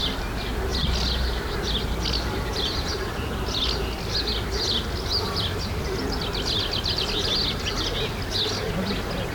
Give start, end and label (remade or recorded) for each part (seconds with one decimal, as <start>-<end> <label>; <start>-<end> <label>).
0.0-9.3 recorded